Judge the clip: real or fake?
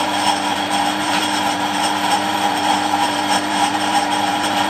fake